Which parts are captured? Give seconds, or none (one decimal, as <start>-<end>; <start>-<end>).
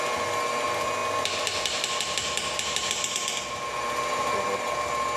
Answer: 0.0-5.2